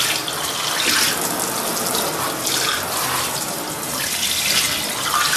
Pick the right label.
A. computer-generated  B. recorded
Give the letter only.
B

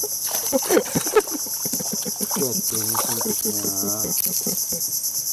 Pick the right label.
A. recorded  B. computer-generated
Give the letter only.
A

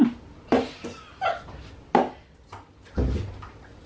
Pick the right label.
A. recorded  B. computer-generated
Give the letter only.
A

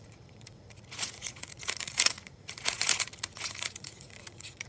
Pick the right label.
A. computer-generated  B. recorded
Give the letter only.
A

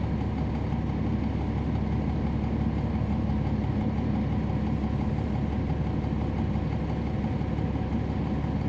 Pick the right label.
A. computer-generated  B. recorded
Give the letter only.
B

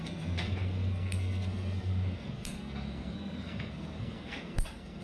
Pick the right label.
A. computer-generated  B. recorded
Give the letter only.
A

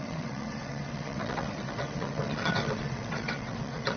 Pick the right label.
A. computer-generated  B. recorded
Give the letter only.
A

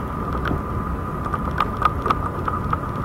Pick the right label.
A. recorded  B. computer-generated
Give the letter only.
A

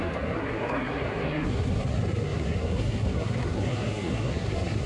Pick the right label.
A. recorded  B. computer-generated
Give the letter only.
B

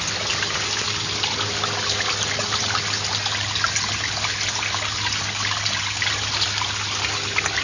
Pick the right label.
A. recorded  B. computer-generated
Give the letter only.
A